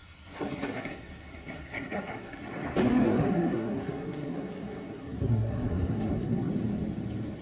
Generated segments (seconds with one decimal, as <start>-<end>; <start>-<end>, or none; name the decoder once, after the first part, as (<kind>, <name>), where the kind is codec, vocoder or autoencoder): 0.0-2.4 (codec, SNAC); 2.8-6.5